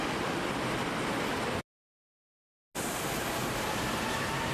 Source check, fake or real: real